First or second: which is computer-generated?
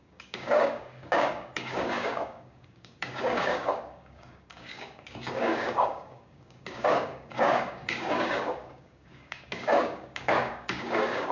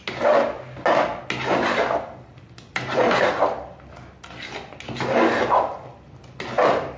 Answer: first